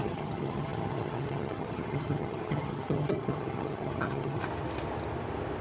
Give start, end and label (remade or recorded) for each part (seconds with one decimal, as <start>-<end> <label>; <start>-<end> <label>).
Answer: 0.0-4.4 remade; 4.4-5.6 recorded